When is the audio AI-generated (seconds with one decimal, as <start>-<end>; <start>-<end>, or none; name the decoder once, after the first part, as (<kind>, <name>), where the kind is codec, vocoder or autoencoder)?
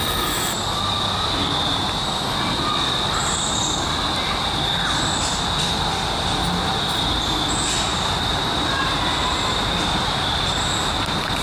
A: 7.9-10.4 (vocoder, BigVGAN v2)